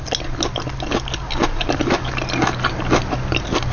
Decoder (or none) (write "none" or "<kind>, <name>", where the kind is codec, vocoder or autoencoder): none